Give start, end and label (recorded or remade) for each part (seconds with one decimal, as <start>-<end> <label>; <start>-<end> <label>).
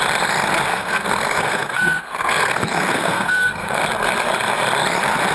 0.0-0.7 recorded; 0.7-3.8 remade; 3.8-5.3 recorded